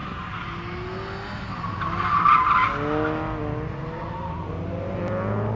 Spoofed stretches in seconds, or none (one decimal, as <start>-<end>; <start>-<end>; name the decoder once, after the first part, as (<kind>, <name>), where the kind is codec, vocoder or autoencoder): none